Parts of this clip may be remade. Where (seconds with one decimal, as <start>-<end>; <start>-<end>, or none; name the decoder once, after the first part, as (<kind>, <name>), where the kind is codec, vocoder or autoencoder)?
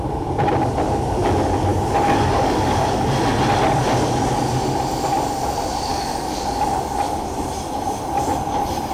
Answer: 1.7-3.0 (codec, DAC); 5.9-6.8